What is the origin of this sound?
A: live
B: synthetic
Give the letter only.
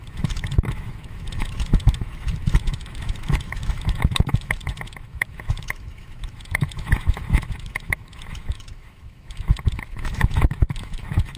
B